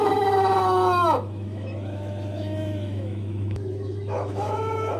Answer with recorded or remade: remade